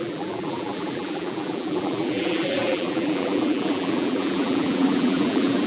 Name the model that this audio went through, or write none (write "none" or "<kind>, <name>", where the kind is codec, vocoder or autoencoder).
vocoder, BigVGAN v2